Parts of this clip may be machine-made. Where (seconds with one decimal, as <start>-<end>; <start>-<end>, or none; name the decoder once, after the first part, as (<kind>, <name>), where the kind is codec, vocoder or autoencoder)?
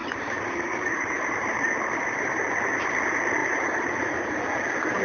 0.0-2.9 (vocoder, BigVGAN v2); 3.4-4.3